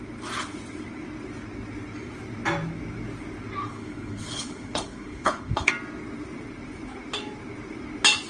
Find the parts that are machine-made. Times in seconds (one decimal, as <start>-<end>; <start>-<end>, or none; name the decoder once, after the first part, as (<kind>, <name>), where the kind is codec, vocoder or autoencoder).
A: 3.6-5.7 (codec, HILCodec)